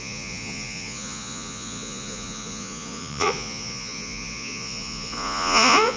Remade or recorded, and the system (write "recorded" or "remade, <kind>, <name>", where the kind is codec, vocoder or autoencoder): remade, vocoder, Vocos